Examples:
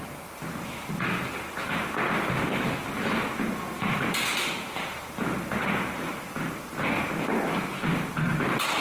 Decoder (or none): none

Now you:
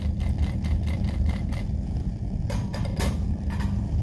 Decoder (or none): vocoder, BigVGAN v2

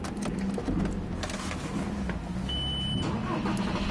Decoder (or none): none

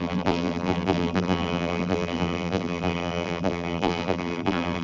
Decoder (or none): vocoder, BigVGAN v2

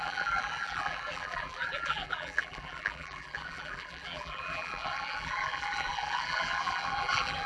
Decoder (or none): vocoder, BigVGAN v2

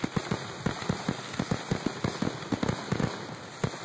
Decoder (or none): none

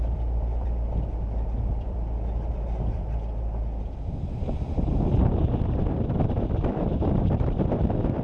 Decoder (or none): vocoder, BigVGAN v2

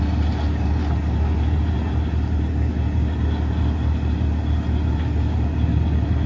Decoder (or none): none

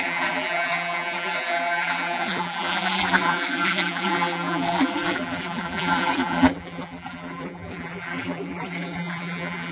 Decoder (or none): vocoder, BigVGAN v2